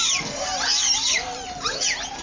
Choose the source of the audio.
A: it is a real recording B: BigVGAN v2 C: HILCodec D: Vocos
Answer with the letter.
A